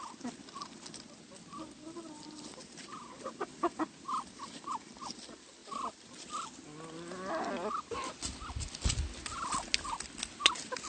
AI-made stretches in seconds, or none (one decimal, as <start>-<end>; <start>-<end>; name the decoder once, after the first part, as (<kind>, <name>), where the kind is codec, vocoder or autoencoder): none